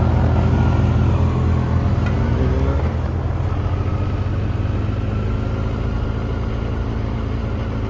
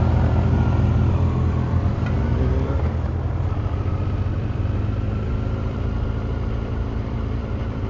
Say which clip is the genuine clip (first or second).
first